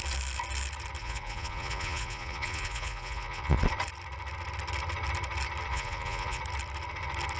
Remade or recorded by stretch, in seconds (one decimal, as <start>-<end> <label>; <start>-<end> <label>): 0.0-1.0 recorded; 1.0-3.6 remade; 3.6-5.7 recorded; 5.7-6.4 remade; 6.4-7.4 recorded